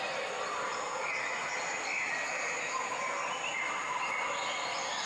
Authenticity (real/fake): real